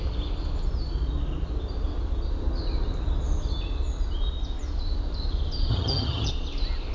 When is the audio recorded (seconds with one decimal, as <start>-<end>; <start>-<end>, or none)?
0.0-5.7; 6.3-6.9